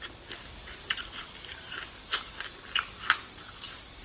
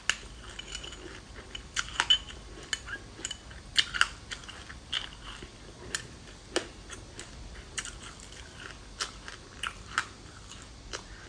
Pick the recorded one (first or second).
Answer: second